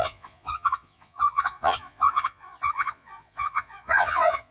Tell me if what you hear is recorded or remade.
remade